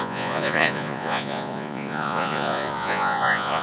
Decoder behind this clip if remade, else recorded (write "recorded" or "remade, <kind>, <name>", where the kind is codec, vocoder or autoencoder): remade, vocoder, Vocos